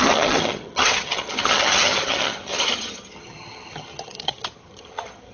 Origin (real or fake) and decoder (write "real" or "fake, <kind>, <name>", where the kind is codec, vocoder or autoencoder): fake, vocoder, HiFi-GAN